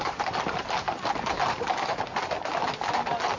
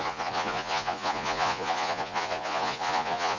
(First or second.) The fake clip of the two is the second